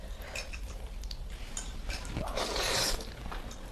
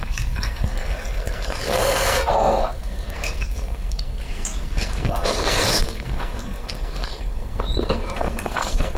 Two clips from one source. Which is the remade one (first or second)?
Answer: second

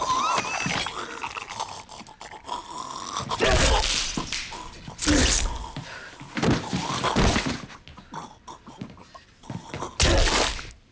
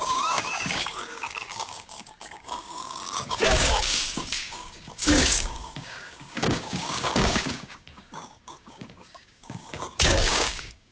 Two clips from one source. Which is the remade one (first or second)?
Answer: second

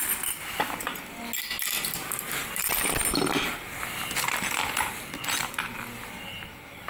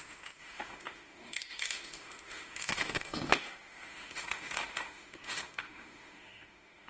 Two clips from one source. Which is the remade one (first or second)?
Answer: second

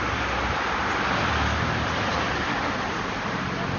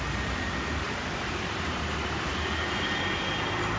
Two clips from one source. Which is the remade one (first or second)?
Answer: second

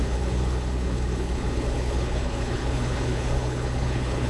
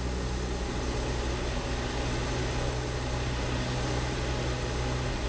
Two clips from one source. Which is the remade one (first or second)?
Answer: first